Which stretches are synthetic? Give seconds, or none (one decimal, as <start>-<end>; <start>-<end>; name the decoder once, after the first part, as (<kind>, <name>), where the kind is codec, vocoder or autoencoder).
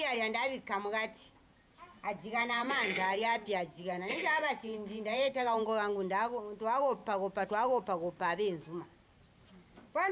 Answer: 1.2-5.6 (vocoder, Vocos)